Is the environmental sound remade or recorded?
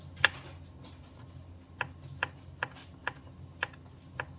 recorded